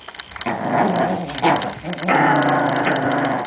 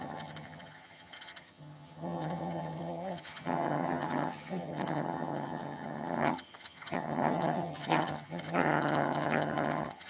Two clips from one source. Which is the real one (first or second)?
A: first